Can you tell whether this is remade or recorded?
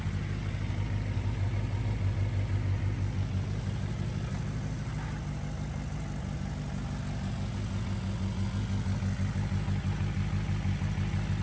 recorded